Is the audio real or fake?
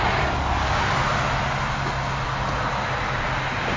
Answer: real